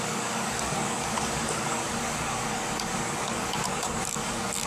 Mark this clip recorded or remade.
remade